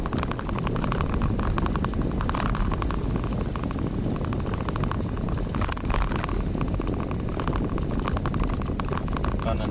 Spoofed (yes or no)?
no